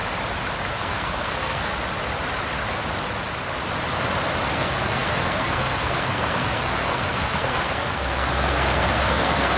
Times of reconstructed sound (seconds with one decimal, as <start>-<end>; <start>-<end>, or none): 0.7-1.7; 4.5-9.6